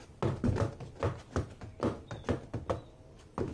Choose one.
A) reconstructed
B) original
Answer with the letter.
B